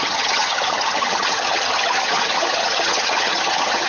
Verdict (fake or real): fake